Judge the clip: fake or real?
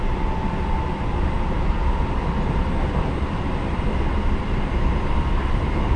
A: real